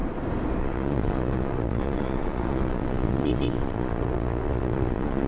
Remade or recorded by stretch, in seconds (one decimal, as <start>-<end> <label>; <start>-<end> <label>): 0.0-0.6 recorded; 0.6-5.3 remade